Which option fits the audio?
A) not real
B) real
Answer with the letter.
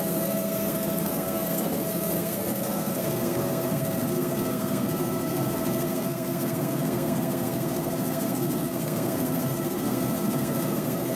A